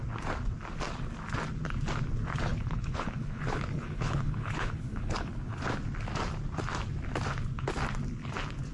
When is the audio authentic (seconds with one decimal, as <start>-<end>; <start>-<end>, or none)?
0.0-2.5; 5.6-8.7